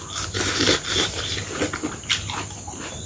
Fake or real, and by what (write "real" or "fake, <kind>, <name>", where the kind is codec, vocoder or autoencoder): real